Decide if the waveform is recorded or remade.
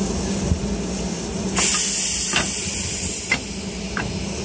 recorded